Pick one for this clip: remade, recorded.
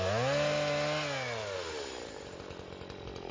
recorded